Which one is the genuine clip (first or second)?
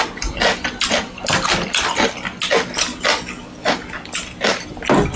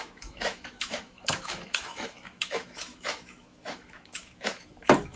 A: first